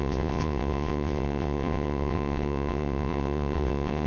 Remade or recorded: remade